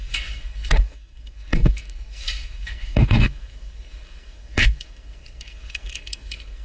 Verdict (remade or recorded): remade